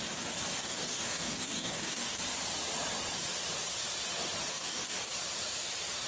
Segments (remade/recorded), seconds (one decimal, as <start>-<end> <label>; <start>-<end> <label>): 0.0-0.6 recorded; 0.6-2.2 remade; 2.2-4.5 recorded; 4.5-5.1 remade; 5.1-6.1 recorded